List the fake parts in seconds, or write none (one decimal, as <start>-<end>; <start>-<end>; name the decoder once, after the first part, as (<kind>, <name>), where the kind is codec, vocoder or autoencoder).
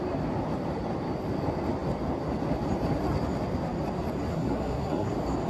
4.3-5.1 (codec, SNAC)